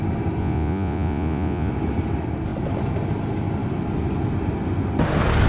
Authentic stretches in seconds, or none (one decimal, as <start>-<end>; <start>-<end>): 0.0-0.4; 1.7-5.5